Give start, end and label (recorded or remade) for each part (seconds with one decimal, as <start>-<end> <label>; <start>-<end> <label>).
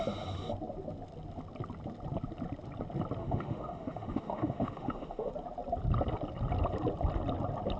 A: 0.0-3.2 recorded; 3.2-5.3 remade; 5.3-7.8 recorded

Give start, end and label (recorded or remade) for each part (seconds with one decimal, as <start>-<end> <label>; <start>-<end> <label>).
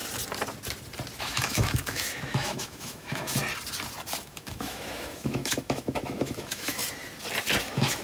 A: 0.0-1.2 recorded; 1.2-3.4 remade; 3.4-4.2 recorded; 4.2-6.8 remade; 6.8-7.6 recorded; 7.6-8.0 remade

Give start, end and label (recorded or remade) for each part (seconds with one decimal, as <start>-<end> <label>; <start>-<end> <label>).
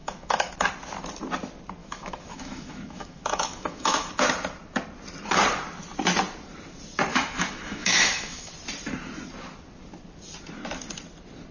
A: 0.0-0.5 remade; 0.5-1.8 recorded; 1.8-4.1 remade; 4.1-7.1 recorded; 7.1-8.5 remade; 8.5-11.5 recorded